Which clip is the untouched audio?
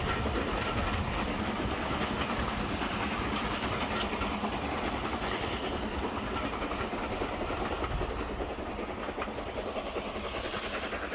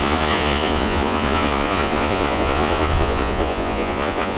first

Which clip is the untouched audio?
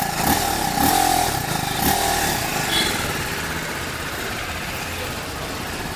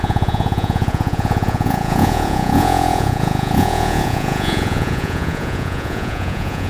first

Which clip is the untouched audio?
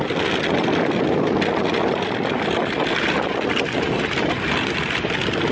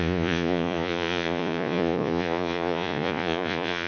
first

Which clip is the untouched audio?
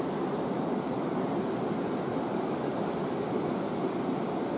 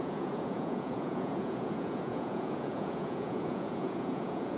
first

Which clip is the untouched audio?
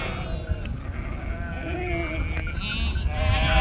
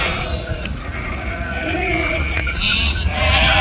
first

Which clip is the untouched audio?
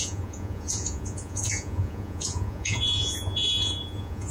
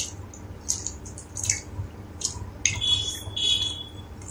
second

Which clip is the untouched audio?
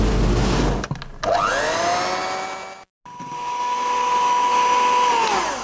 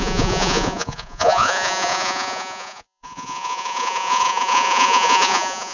first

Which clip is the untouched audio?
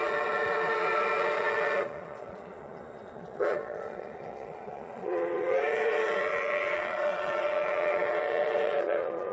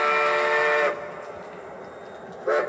second